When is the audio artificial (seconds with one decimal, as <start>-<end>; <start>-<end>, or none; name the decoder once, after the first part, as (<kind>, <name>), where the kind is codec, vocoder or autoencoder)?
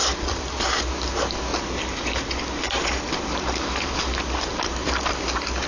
1.5-4.9 (vocoder, BigVGAN v2)